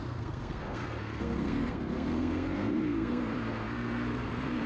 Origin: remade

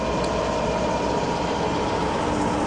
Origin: recorded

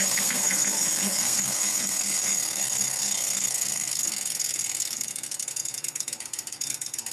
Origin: remade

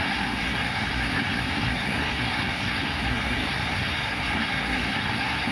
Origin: remade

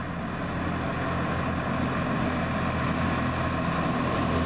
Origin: recorded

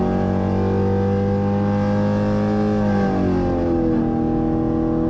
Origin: recorded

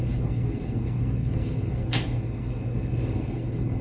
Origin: remade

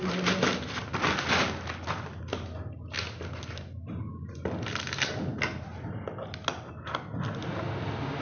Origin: recorded